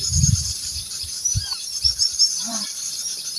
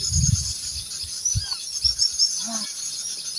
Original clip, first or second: second